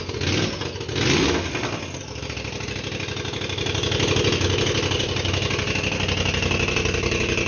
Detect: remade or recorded recorded